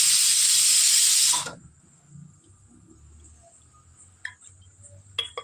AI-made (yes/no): no